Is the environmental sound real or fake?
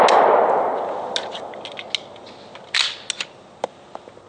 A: real